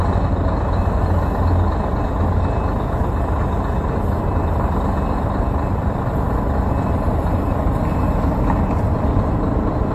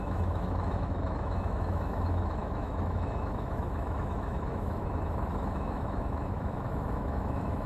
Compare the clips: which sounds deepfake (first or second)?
second